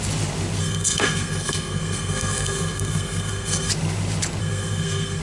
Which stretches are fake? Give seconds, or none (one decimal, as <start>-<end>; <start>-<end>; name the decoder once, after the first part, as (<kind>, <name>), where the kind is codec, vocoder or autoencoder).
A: 0.6-3.7 (codec, SNAC); 4.4-5.2